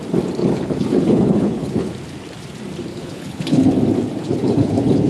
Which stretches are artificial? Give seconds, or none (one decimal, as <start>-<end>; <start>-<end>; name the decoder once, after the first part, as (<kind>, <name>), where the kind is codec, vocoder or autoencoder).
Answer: 0.4-1.9 (codec, HILCodec); 2.9-3.7; 4.2-5.1